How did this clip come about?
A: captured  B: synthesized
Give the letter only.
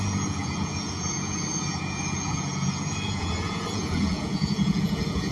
B